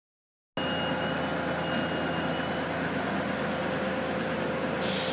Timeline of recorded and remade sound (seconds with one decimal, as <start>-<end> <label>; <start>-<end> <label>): 0.0-5.1 recorded